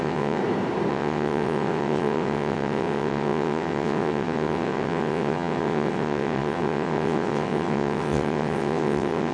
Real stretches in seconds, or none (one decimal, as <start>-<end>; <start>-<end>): 0.4-0.9